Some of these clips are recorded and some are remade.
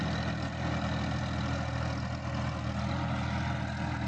recorded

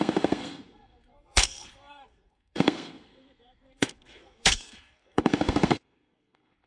remade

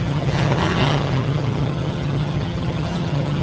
remade